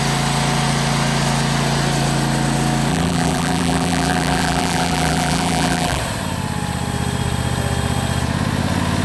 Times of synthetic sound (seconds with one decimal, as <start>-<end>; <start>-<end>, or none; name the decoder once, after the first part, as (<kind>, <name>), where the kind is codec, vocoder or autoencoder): 2.9-6.0 (vocoder, BigVGAN v2)

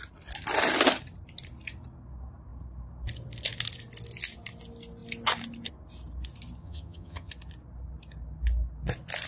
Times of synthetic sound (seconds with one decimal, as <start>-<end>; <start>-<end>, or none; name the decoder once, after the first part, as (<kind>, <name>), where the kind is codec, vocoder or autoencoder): 6.6-7.3 (vocoder, HiFi-GAN)

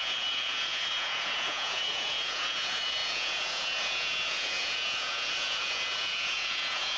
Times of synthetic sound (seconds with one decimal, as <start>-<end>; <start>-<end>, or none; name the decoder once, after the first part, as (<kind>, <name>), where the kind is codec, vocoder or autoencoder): 0.0-7.0 (vocoder, Vocos)

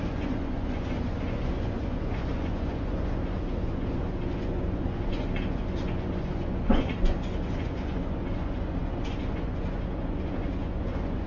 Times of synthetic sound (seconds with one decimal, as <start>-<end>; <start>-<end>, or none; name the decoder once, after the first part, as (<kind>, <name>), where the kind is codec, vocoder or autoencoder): 0.0-11.3 (vocoder, Vocos)

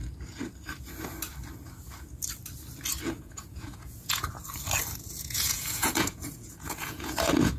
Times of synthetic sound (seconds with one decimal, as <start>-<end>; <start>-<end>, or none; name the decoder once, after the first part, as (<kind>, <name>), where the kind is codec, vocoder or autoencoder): 3.2-4.4 (vocoder, Vocos); 5.2-7.6

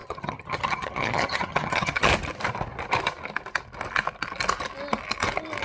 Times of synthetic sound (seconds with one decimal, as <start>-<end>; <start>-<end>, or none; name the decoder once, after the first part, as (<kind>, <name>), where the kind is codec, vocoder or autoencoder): 0.0-2.1 (vocoder, HiFi-GAN)